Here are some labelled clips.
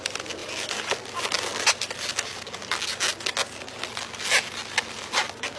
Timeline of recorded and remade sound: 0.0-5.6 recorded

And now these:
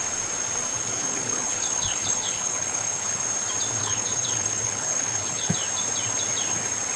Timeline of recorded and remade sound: 0.0-0.7 recorded; 0.7-3.2 remade; 3.2-3.8 recorded; 3.8-5.5 remade; 5.5-7.0 recorded

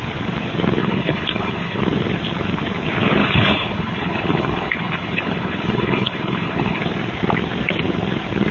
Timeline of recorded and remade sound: 0.0-0.8 recorded; 0.8-1.8 remade; 1.8-3.2 recorded; 3.2-6.8 remade; 6.8-8.5 recorded